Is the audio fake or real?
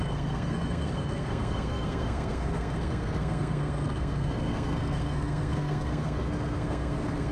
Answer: fake